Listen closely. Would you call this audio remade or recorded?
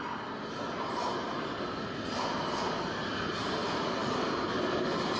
recorded